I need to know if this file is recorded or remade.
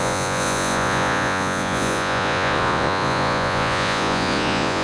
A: remade